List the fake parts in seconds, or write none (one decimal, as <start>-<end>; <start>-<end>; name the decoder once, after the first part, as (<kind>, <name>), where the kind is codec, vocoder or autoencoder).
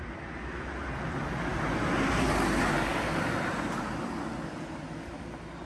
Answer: none